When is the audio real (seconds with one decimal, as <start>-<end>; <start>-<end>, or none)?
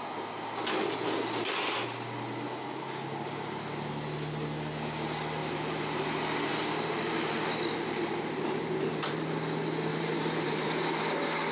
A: 0.0-5.4; 9.3-9.9; 10.8-11.5